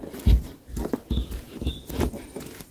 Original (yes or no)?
yes